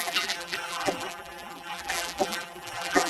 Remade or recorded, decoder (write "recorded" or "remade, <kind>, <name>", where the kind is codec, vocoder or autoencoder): remade, vocoder, BigVGAN v2